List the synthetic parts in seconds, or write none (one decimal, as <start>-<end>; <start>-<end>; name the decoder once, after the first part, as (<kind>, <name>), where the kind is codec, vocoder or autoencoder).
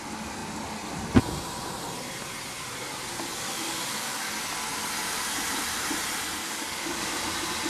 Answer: 3.3-4.3 (codec, DAC); 6.4-7.1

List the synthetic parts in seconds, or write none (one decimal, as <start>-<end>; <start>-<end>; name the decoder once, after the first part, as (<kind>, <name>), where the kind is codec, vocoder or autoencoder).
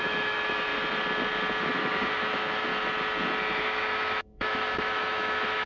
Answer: 0.0-0.7 (autoencoder, DAC-VAE); 1.6-2.7; 3.6-5.7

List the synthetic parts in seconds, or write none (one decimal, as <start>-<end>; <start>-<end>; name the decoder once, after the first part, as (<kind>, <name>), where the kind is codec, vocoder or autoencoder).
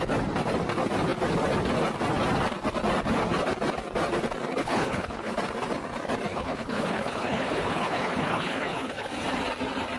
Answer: 4.6-5.3 (codec, HILCodec); 6.3-9.1